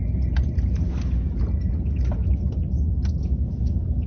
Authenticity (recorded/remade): recorded